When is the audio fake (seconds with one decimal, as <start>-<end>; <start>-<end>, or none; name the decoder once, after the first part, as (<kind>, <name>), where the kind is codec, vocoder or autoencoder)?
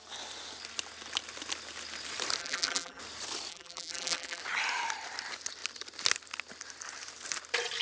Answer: 2.4-3.0 (vocoder, BigVGAN v2); 3.5-4.4